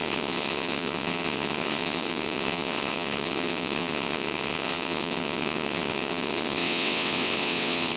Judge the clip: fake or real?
fake